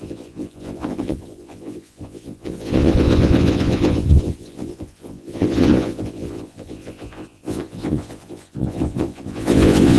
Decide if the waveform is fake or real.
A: fake